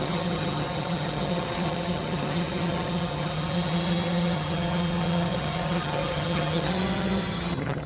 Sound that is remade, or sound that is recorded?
remade